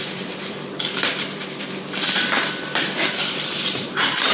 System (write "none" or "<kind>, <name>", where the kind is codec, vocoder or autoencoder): vocoder, BigVGAN v2